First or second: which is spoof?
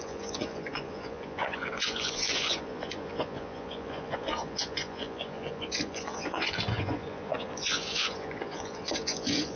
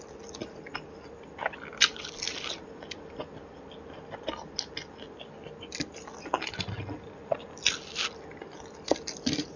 first